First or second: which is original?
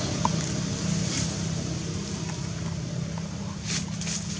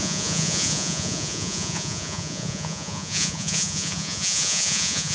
first